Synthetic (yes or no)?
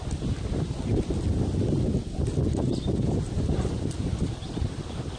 no